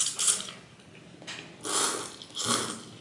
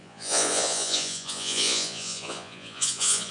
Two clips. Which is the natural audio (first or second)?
first